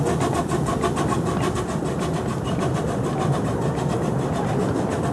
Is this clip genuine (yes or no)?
no